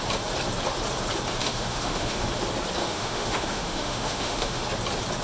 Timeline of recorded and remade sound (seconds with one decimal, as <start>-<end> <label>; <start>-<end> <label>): 0.0-1.4 recorded; 1.4-2.3 remade; 2.3-2.8 recorded; 2.8-4.6 remade; 4.6-5.2 recorded